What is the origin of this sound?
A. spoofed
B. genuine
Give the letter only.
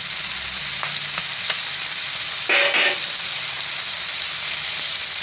B